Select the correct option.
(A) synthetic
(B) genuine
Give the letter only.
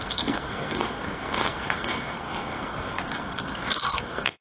A